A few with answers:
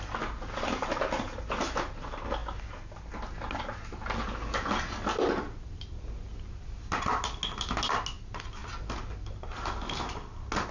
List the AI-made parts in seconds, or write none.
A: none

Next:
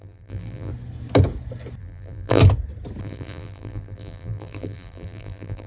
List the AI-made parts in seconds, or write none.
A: 0.0-0.7 (vocoder, BigVGAN v2); 1.8-2.4; 3.0-5.7

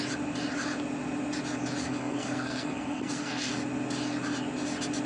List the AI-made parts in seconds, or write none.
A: 1.8-3.5 (codec, SNAC)

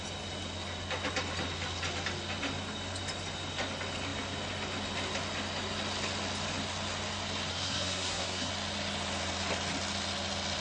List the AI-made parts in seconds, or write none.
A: 7.5-8.5 (codec, SNAC)